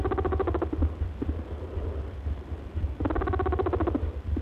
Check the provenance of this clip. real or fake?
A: real